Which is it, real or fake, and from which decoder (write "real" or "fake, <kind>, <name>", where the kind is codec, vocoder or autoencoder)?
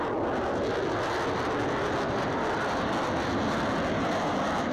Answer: real